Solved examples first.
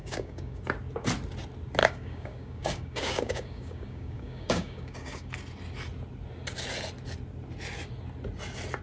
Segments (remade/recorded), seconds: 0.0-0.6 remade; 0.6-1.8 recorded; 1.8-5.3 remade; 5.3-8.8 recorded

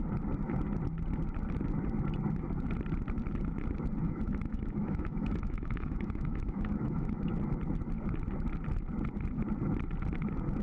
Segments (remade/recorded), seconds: 0.0-4.0 recorded; 4.0-7.3 remade; 7.3-10.6 recorded

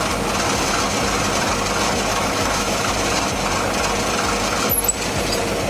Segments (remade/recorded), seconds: 0.0-2.1 recorded; 2.1-2.9 remade; 2.9-5.7 recorded